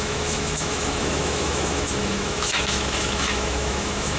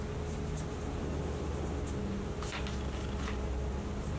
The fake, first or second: first